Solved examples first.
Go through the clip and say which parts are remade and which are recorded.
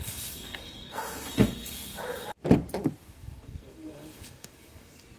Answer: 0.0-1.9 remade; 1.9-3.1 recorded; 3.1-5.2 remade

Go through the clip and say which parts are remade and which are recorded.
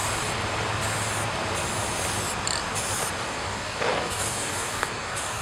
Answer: 0.0-3.2 recorded; 3.2-5.4 remade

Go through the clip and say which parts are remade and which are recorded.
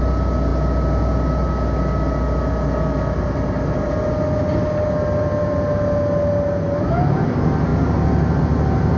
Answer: 0.0-9.0 recorded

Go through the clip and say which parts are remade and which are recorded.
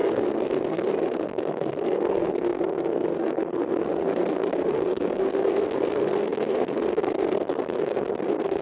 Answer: 0.0-8.6 remade